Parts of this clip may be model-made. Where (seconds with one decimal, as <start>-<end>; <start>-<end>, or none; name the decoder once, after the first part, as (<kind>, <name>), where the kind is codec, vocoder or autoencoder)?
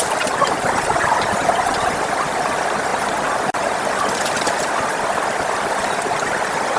none